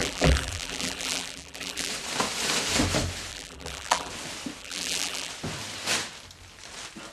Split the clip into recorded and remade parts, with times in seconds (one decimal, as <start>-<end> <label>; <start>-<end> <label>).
0.0-1.9 remade; 1.9-3.3 recorded; 3.3-4.1 remade; 4.1-4.6 recorded; 4.6-5.3 remade; 5.3-7.1 recorded